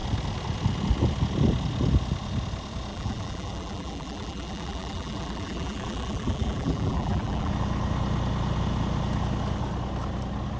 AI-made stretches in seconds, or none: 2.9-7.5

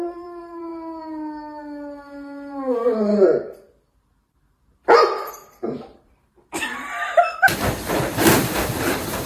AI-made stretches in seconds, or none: 0.0-0.7; 5.3-9.3

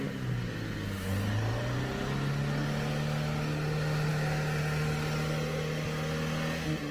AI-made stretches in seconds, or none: none

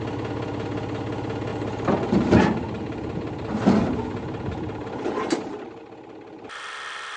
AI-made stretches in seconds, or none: 1.5-5.8

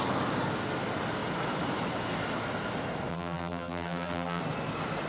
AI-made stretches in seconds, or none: 3.1-4.4

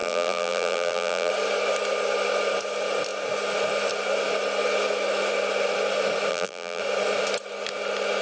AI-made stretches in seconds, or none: 0.0-1.3; 6.3-6.8

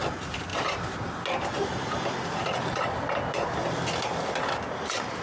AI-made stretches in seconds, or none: none